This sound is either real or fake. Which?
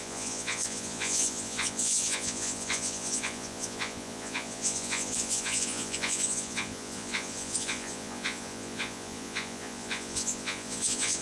fake